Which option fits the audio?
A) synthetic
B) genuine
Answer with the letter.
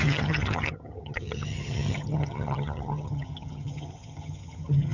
A